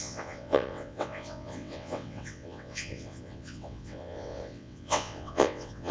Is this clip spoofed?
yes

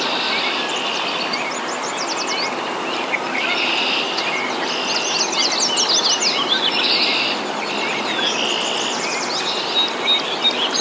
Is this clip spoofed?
no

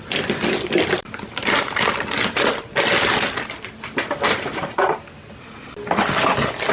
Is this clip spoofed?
no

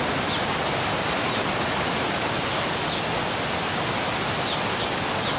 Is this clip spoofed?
no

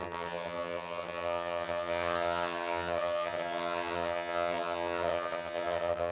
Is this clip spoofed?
yes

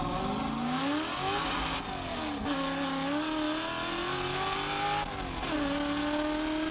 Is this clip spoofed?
no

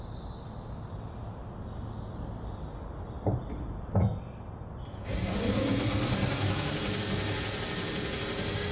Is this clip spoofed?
no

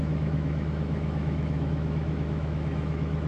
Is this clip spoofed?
yes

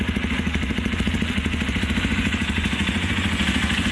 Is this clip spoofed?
yes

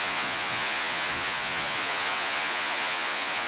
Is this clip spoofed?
yes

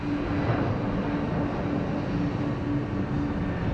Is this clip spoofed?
no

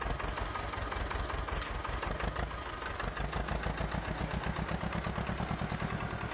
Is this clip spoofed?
no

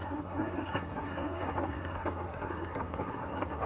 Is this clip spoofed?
yes